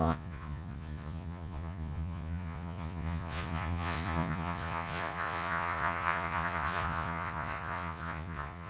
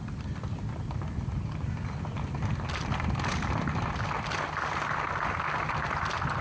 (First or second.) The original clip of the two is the second